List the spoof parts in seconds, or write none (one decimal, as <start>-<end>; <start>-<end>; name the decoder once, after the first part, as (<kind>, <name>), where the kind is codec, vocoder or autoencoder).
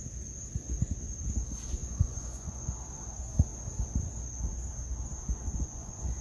1.8-2.8 (vocoder, Vocos); 5.5-6.2